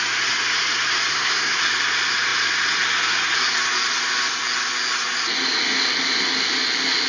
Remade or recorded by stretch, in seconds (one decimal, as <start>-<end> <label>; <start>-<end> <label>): 0.0-1.1 recorded; 1.1-1.6 remade; 1.6-7.1 recorded